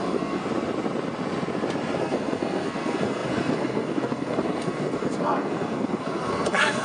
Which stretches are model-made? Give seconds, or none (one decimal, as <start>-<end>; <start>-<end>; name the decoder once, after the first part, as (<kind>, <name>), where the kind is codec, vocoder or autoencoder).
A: 0.0-0.4 (codec, SNAC); 2.0-6.8